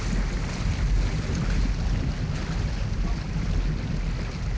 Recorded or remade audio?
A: recorded